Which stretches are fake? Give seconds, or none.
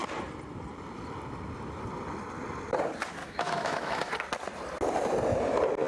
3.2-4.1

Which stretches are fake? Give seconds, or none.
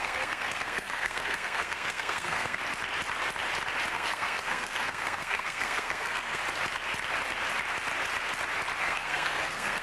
0.0-2.6; 3.9-6.4; 8.8-9.8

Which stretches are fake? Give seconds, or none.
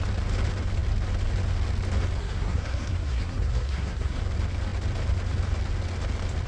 2.2-4.2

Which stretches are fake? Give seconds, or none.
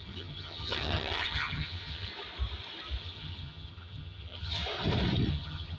0.0-2.1; 3.0-4.6; 5.3-5.8